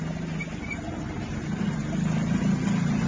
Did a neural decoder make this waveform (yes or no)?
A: no